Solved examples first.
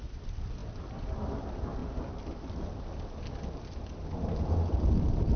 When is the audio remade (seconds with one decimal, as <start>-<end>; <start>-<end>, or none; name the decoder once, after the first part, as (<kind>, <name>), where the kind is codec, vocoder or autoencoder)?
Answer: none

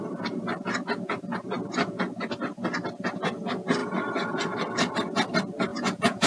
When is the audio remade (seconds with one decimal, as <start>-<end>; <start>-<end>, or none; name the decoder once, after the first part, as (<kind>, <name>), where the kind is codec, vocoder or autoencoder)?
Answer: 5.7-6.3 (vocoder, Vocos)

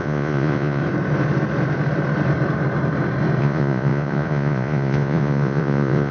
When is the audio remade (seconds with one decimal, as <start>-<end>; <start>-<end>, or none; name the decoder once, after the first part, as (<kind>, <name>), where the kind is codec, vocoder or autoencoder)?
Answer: 0.0-0.8 (vocoder, Vocos); 3.4-6.1

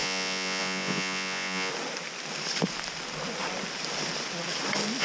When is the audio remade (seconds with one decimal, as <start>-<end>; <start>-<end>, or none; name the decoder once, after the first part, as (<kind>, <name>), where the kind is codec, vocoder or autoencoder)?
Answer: 0.0-1.7 (vocoder, Vocos)

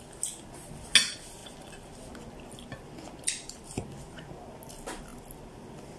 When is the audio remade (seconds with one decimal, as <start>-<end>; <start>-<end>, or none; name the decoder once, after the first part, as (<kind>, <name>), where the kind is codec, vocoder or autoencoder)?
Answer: none

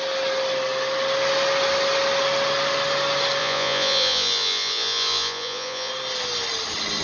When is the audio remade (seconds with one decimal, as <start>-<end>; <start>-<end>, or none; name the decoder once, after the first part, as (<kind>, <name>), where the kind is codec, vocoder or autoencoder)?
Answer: 3.4-5.9 (vocoder, Vocos)

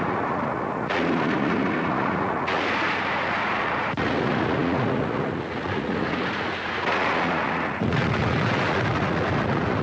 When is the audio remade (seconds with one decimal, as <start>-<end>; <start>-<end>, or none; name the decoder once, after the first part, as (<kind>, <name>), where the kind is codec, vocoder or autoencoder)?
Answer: 0.0-9.8 (vocoder, Vocos)